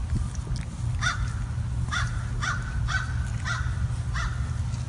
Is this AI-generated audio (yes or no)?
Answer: no